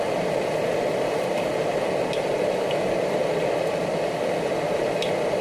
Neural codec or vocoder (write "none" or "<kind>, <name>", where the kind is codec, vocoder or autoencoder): none